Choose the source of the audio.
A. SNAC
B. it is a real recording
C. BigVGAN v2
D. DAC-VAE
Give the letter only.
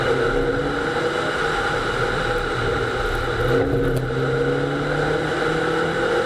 B